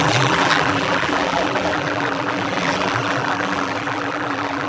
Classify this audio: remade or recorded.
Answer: remade